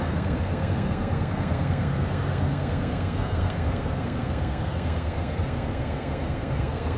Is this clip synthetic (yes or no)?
yes